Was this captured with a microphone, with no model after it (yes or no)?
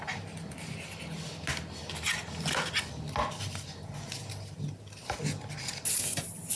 yes